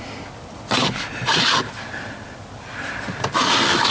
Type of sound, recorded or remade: recorded